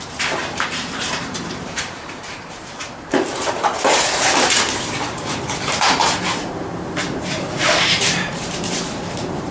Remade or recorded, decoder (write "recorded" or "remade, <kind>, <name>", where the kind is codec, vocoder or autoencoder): remade, vocoder, BigVGAN v2